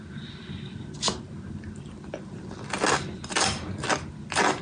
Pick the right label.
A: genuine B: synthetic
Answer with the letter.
A